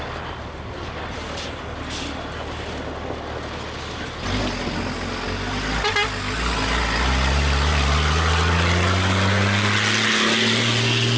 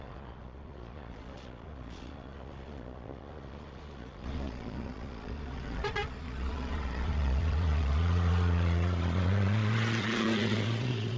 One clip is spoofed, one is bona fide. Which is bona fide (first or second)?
first